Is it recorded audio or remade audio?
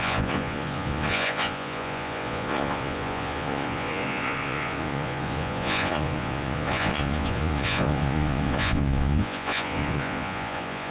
remade